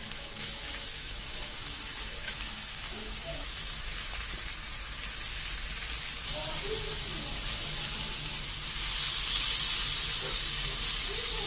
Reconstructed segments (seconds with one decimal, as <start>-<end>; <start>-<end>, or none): 0.0-4.3